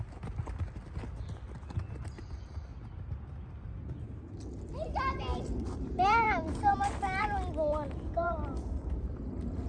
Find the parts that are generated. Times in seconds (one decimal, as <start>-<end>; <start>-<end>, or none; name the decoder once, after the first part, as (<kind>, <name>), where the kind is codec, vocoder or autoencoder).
0.0-2.7 (vocoder, BigVGAN v2); 4.6-9.7